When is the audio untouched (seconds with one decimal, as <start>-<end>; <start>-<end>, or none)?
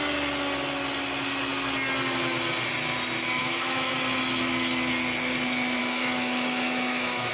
0.0-3.4; 3.9-5.8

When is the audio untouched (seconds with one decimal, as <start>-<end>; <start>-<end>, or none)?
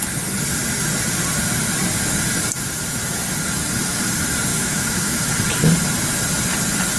0.0-4.5; 5.3-7.0